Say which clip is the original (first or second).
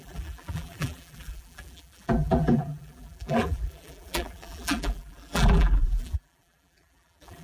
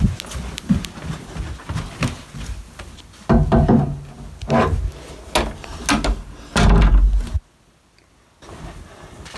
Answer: second